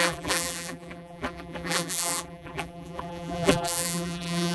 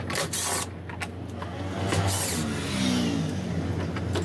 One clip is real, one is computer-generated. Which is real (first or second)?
second